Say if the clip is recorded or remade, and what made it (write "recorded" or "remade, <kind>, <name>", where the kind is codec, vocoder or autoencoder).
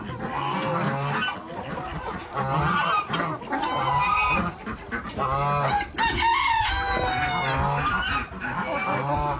recorded